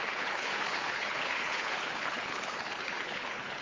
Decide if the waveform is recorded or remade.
remade